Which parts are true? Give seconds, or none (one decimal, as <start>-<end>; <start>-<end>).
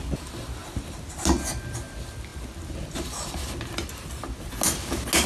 0.0-5.3